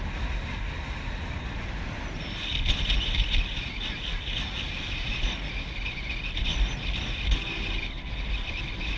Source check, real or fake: real